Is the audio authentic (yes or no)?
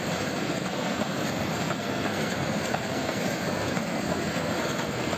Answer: no